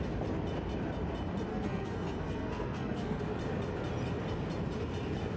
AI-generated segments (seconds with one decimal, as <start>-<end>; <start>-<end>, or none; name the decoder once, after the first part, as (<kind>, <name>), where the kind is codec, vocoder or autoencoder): 1.5-3.2 (codec, SNAC)